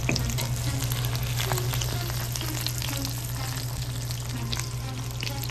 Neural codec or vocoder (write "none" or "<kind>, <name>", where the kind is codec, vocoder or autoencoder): none